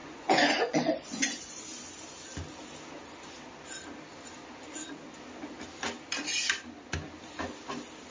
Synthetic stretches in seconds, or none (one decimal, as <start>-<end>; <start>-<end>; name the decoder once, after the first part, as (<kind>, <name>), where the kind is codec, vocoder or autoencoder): 0.0-1.6 (vocoder, Vocos)